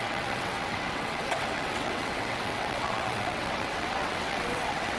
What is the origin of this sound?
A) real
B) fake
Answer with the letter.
B